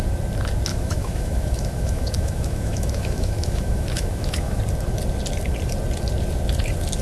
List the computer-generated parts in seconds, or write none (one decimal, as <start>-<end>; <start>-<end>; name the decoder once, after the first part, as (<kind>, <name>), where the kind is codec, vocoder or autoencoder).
0.7-4.6 (autoencoder, DAC-VAE)